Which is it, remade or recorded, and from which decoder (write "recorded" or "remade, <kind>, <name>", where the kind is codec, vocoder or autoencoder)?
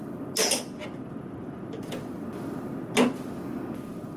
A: recorded